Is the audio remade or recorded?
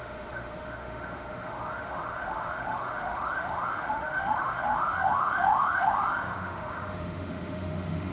remade